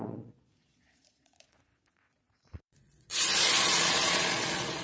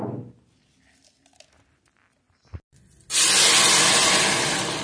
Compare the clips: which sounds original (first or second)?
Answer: second